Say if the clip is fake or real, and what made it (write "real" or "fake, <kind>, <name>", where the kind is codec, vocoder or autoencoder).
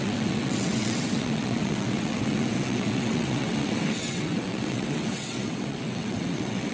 fake, vocoder, WaveNeXt